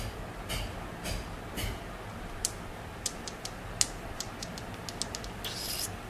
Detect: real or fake real